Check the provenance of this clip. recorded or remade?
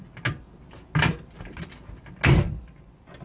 recorded